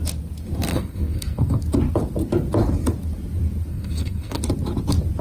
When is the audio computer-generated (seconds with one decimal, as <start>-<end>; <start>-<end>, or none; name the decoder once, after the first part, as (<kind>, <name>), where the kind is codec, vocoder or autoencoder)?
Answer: 0.7-1.6 (codec, SNAC); 3.7-4.4